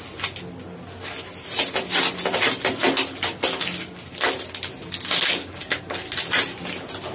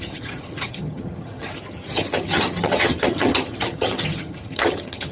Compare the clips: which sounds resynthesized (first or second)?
second